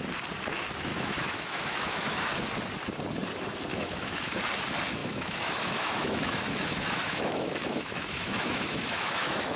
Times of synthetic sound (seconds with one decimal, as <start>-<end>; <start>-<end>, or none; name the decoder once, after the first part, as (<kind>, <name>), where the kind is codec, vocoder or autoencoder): 0.9-2.3 (autoencoder, DAC-VAE); 3.7-4.4; 5.0-9.6